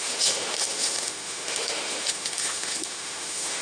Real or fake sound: fake